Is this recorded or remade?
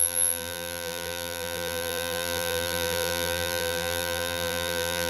remade